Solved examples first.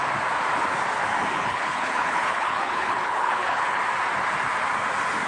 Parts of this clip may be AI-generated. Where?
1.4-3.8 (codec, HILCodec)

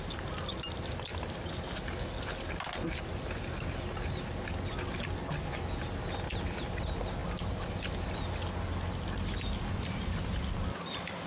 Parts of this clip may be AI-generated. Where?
none

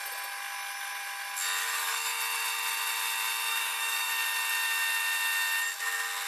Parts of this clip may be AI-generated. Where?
1.6-2.2 (codec, DAC); 3.5-4.1

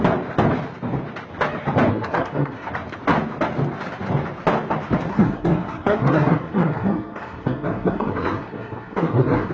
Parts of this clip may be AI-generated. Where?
1.9-2.7 (codec, SNAC); 5.1-9.5